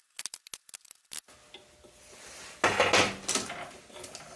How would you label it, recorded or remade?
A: recorded